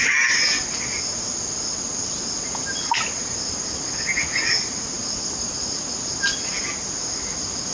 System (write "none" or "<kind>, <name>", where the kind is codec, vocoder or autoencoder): none